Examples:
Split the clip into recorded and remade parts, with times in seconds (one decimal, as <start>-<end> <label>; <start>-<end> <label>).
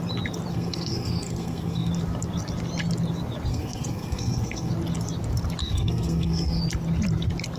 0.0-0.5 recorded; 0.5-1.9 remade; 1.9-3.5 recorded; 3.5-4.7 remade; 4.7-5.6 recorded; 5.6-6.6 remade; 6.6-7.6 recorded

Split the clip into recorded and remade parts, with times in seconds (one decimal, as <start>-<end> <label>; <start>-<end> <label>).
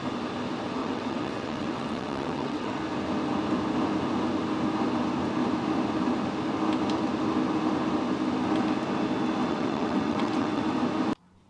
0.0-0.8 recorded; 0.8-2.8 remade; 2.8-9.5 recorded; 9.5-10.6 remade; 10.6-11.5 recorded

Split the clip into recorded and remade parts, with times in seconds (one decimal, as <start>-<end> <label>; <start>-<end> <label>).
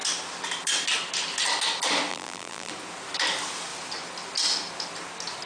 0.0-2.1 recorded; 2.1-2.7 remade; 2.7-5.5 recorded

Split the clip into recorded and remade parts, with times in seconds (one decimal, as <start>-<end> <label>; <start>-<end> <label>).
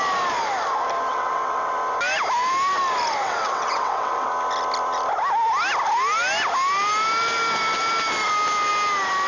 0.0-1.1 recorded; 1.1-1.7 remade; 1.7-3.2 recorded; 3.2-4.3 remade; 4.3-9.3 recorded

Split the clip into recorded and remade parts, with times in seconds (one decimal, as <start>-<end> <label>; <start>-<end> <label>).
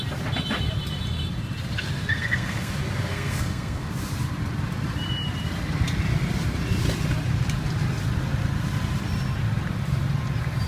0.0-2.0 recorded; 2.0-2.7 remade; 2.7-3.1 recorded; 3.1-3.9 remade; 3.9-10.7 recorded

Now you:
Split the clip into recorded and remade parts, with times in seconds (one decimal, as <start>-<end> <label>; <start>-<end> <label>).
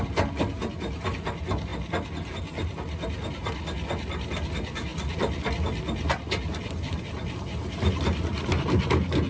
0.0-9.3 recorded